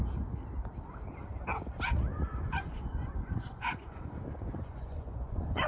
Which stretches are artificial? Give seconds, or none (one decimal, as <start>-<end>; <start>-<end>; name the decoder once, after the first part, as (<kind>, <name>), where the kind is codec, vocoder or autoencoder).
2.1-5.7 (vocoder, Vocos)